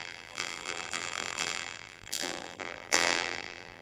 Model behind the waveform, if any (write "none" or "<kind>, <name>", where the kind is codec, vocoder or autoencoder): vocoder, BigVGAN v2